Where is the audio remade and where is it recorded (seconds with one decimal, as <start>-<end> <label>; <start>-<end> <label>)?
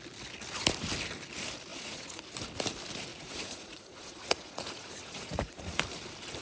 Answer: 0.0-1.7 recorded; 1.7-2.2 remade; 2.2-3.1 recorded; 3.1-5.8 remade; 5.8-6.4 recorded